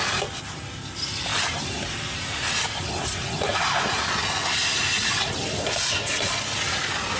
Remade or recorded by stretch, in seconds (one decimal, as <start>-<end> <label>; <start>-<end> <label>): 0.0-1.3 recorded; 1.3-2.6 remade; 2.6-3.5 recorded; 3.5-4.1 remade; 4.1-7.2 recorded